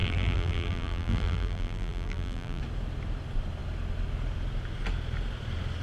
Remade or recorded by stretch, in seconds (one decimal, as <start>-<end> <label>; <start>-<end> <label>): 0.0-2.6 remade; 2.6-5.8 recorded